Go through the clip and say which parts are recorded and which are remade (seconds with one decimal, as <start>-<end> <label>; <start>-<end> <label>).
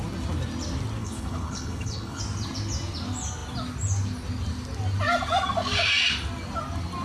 0.0-1.0 recorded; 1.0-2.2 remade; 2.2-7.0 recorded